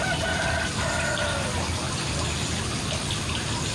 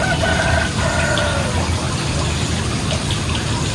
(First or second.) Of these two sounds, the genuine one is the first